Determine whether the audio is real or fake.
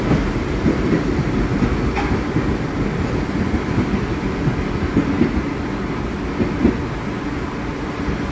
real